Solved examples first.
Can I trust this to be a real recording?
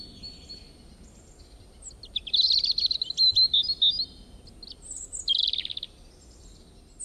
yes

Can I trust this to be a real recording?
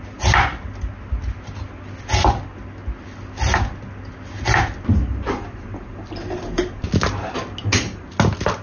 yes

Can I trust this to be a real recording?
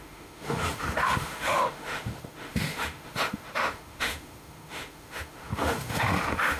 no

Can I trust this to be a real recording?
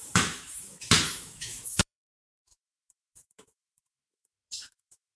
no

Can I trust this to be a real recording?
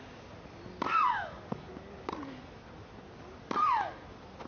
yes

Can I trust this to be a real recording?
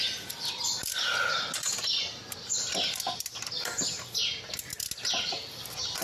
yes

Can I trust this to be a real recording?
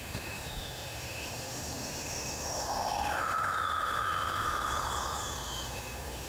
no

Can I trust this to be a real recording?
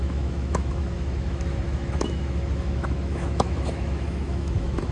no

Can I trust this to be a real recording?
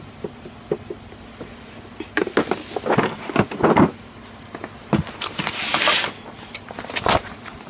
yes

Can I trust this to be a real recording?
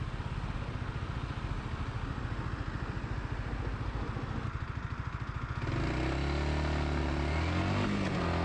yes